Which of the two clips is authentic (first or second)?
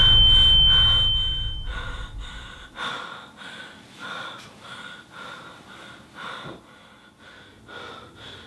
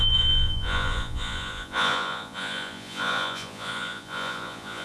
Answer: first